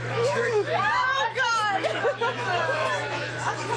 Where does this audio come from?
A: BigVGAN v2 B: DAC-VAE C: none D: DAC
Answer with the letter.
B